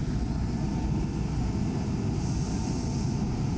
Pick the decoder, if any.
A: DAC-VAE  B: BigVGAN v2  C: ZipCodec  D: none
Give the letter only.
D